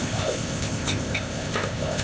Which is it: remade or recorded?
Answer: remade